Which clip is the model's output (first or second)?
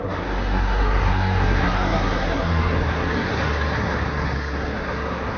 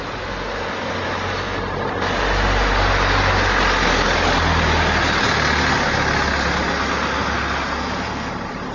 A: first